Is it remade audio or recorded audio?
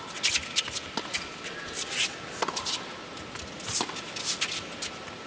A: recorded